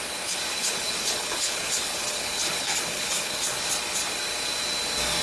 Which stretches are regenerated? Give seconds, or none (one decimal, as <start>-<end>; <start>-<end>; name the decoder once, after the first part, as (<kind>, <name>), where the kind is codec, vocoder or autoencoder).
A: 0.5-3.6 (codec, HILCodec)